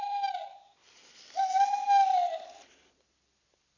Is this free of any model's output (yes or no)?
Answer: yes